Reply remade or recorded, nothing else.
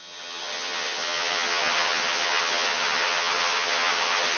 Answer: remade